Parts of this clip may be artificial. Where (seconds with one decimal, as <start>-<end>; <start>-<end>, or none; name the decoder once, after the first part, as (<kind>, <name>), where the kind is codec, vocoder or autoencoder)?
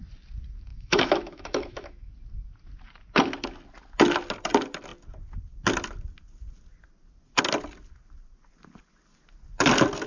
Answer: 0.7-2.1 (autoencoder, DAC-VAE)